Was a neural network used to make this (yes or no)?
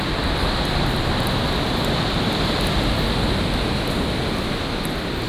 no